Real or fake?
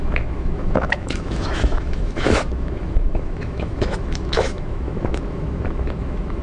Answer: fake